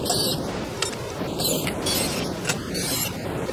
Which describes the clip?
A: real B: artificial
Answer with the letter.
A